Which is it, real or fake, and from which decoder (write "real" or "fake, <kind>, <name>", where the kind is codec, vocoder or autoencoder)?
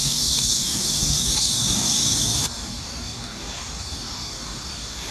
fake, codec, DAC